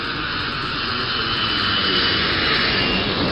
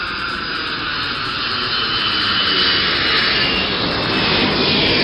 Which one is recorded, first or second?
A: second